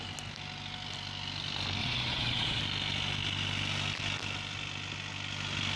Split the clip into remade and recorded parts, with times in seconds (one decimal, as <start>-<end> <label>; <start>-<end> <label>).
0.0-1.8 recorded; 1.8-2.6 remade; 2.6-5.8 recorded